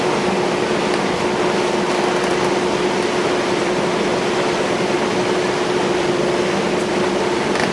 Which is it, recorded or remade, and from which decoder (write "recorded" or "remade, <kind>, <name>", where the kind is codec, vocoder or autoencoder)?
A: recorded